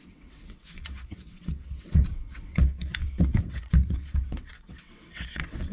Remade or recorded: remade